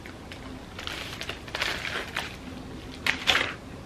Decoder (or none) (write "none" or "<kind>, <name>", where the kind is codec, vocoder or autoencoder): none